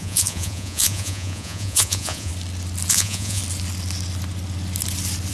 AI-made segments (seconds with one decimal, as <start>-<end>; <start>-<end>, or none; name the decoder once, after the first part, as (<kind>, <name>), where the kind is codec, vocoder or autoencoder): 0.0-2.3 (vocoder, Vocos); 2.9-3.4